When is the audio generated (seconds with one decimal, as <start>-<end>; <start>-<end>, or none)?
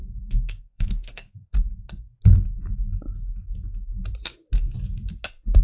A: 0.0-1.5